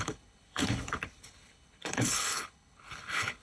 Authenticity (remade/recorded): remade